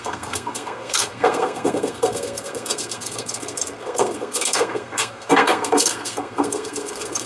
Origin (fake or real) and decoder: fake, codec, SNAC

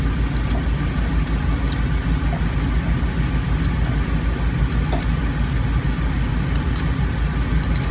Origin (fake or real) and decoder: real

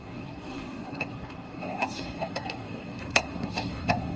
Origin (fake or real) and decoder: fake, codec, SNAC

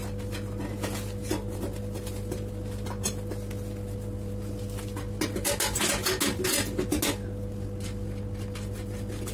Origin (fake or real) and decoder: real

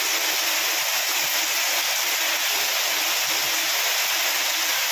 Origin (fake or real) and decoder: real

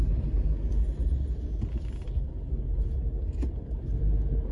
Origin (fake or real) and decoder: real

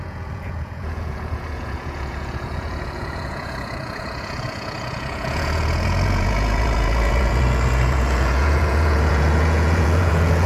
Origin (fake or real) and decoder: fake, vocoder, Vocos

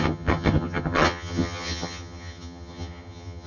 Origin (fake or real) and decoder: fake, vocoder, HiFi-GAN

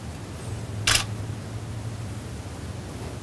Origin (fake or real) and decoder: real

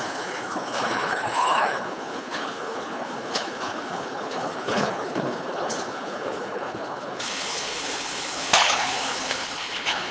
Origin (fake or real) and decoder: fake, codec, HILCodec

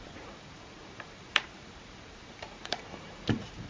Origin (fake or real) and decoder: fake, vocoder, BigVGAN v2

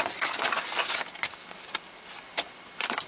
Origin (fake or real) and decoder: real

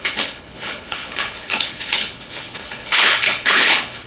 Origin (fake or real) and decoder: fake, codec, HILCodec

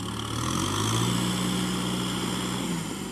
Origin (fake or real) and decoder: real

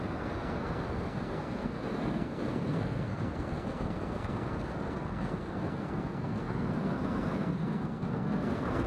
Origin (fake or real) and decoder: fake, codec, SNAC